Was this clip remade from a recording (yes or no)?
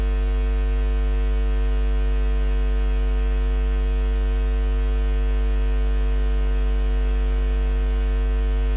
no